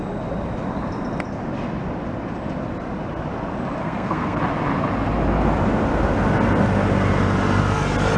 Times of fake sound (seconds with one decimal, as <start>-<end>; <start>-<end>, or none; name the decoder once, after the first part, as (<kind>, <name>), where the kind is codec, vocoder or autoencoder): 3.8-4.4 (codec, SNAC)